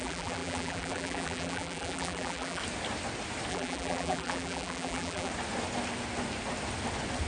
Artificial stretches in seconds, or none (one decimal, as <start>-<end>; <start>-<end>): 0.0-2.6; 3.5-5.3